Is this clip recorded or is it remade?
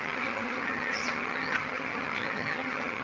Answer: remade